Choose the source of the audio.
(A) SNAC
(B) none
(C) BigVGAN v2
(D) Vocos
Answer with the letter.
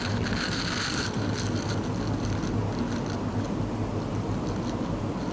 C